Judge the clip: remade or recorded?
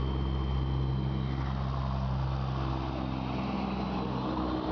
recorded